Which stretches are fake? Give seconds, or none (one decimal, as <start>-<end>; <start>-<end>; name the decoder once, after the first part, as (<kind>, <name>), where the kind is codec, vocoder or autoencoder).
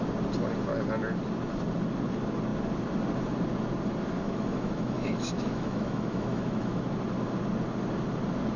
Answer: 4.2-6.8 (autoencoder, DAC-VAE)